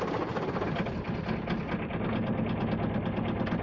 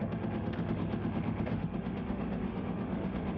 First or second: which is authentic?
first